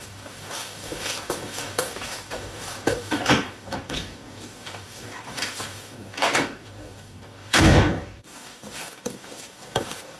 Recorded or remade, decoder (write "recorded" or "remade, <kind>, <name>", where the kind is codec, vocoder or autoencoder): remade, codec, DAC